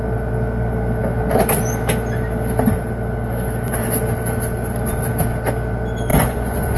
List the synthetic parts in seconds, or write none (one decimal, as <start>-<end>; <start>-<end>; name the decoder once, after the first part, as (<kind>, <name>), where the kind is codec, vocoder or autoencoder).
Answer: 6.1-6.8 (vocoder, Vocos)